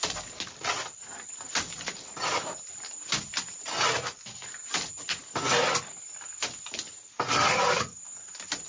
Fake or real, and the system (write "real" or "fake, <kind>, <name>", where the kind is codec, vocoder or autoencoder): real